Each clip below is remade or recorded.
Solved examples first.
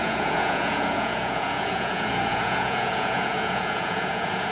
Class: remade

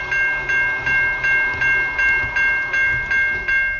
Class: recorded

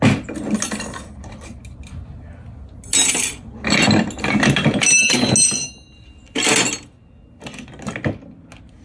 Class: recorded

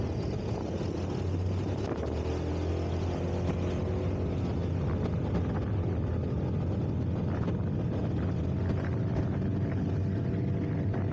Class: recorded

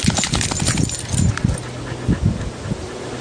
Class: recorded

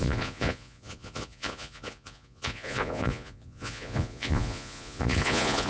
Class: remade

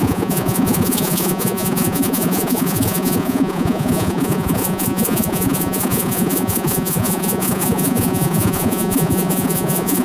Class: remade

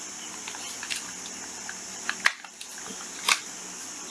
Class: recorded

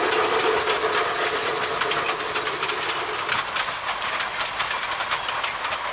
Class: recorded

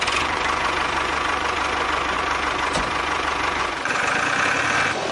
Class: remade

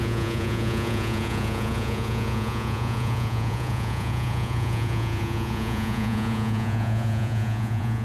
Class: remade